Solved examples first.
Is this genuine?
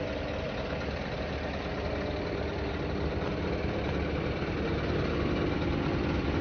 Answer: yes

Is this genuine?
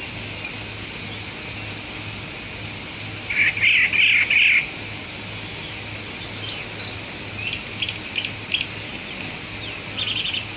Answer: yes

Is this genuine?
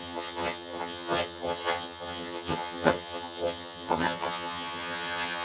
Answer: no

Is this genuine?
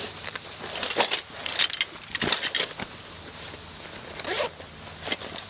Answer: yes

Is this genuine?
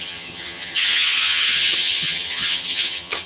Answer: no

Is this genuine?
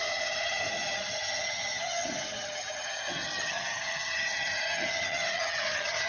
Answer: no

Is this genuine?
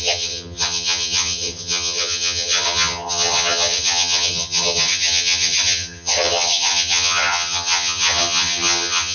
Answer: no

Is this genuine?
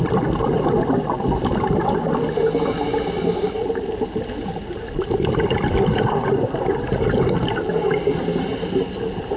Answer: yes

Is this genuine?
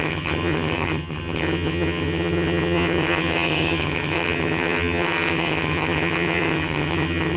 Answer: no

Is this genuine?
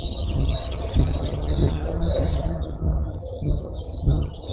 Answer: no